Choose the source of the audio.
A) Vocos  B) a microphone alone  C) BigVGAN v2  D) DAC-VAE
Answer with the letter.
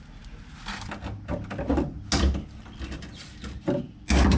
B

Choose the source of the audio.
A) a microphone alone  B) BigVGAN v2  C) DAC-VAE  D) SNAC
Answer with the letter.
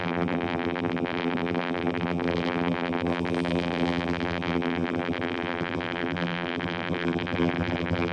B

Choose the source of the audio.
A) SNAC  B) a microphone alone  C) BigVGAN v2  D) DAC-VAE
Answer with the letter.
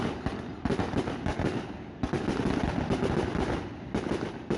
B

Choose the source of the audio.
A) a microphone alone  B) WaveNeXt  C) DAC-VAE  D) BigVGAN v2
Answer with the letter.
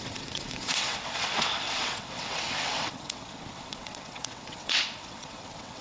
B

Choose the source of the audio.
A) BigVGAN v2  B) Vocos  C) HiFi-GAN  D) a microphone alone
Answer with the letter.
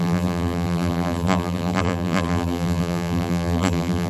A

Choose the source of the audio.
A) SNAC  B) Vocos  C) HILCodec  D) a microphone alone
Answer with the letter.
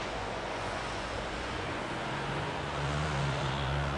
B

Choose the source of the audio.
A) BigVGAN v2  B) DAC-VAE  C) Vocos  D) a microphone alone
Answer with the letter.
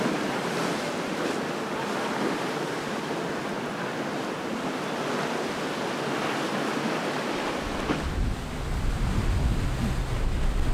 D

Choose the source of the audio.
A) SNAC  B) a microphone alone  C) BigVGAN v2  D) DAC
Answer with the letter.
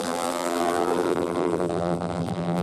C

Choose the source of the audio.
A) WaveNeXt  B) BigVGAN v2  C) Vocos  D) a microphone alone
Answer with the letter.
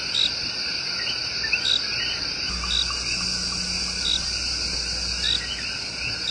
D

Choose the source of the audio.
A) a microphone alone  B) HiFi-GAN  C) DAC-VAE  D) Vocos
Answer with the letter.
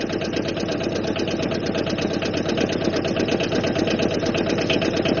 A